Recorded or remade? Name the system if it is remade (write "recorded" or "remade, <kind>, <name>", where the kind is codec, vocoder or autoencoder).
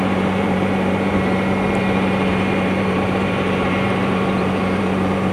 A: remade, vocoder, BigVGAN v2